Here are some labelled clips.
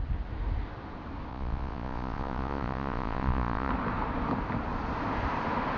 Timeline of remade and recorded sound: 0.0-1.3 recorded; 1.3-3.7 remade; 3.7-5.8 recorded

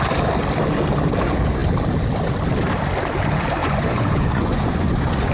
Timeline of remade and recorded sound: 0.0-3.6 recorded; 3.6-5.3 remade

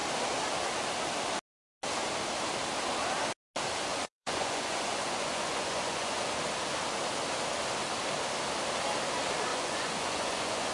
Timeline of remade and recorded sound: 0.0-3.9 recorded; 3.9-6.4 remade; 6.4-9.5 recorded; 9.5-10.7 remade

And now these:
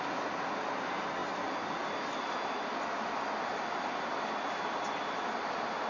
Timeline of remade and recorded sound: 0.0-5.9 recorded

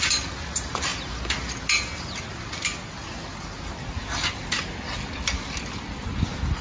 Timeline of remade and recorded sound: 0.0-6.6 recorded

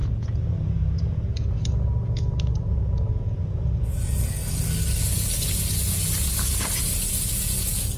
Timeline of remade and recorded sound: 0.0-4.4 remade; 4.4-5.0 recorded; 5.0-8.0 remade

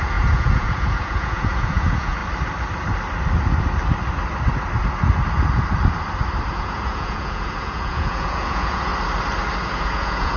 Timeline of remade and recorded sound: 0.0-2.2 remade; 2.2-6.5 recorded; 6.5-8.9 remade; 8.9-9.6 recorded; 9.6-10.4 remade